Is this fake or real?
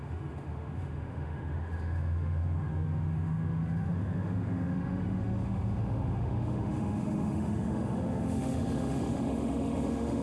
fake